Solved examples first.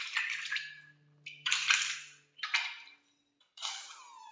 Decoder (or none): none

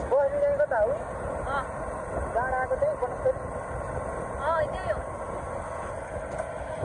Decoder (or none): none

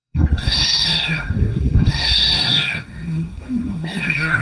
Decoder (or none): codec, SNAC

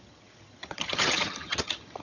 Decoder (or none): vocoder, HiFi-GAN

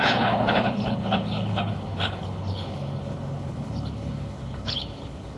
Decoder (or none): codec, HILCodec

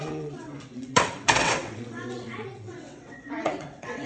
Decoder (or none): vocoder, WaveNeXt